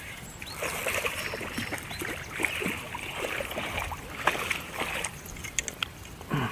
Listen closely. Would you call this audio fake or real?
real